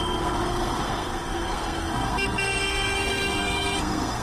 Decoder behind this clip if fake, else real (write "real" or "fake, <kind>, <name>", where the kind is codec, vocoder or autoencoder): fake, codec, SNAC